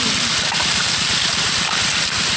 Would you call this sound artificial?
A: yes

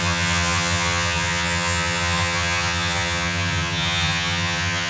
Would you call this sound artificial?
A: yes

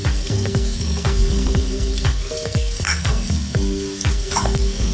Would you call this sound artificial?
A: yes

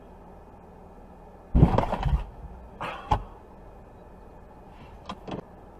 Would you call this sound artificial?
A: no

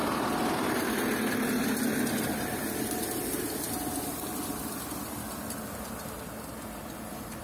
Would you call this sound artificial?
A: no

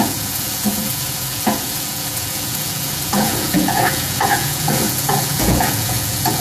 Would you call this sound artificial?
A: yes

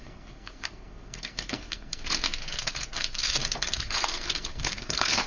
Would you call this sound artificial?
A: yes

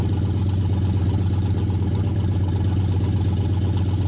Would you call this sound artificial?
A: no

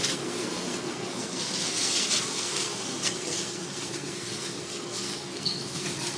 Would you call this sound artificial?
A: yes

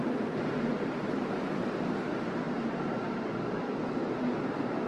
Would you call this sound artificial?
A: yes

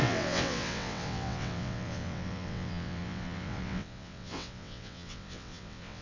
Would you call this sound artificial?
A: yes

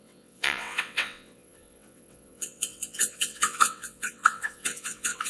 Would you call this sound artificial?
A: yes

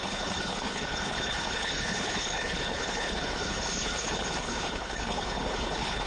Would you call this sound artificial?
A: yes